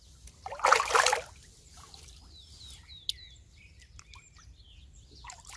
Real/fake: real